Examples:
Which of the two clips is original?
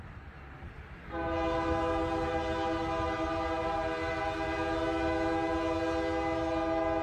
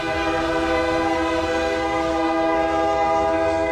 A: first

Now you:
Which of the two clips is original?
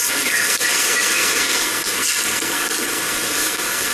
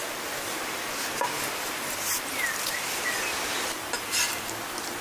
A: second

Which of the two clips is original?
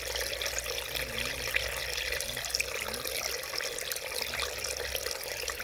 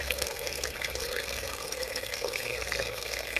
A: first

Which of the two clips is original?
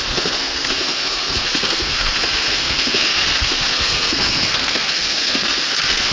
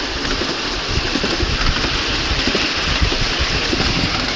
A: second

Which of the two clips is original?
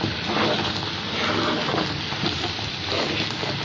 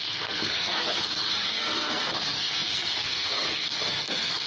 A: first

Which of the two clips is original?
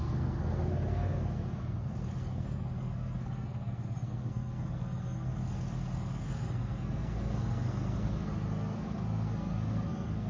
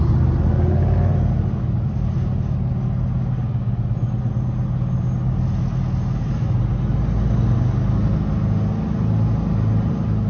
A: second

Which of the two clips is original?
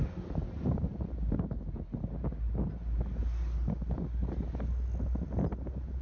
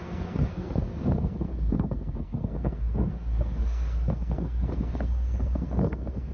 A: first